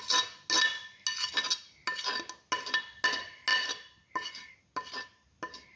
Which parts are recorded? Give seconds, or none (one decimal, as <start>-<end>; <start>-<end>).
0.0-5.8